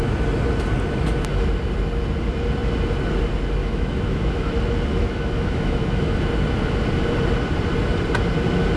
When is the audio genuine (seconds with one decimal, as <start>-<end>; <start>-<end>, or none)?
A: 0.0-3.6; 4.5-4.9; 6.2-8.8